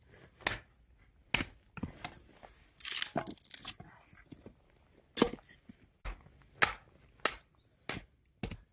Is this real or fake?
real